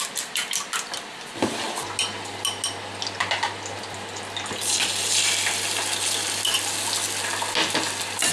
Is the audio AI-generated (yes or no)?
no